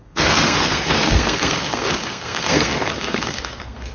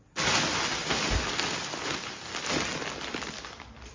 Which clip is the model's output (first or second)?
first